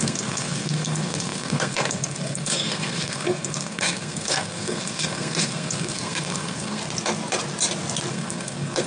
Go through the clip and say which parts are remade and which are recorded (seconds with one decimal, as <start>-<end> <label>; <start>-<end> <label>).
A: 0.0-6.8 remade; 6.8-8.1 recorded; 8.1-8.9 remade